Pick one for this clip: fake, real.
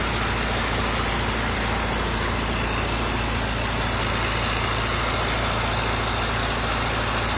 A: real